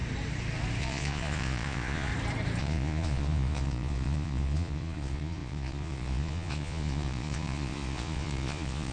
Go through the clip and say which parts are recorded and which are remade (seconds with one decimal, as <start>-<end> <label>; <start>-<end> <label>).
0.0-0.8 recorded; 0.8-2.1 remade; 2.1-2.6 recorded; 2.6-8.9 remade